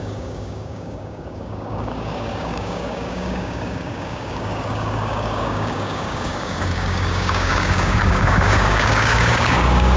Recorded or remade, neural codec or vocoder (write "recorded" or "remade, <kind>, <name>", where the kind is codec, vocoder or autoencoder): remade, codec, DAC